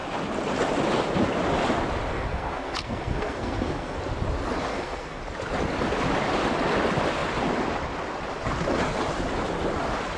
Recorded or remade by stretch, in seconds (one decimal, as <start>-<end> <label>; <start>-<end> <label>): 0.0-2.1 recorded; 2.1-4.0 remade; 4.0-4.7 recorded; 4.7-5.2 remade; 5.2-10.2 recorded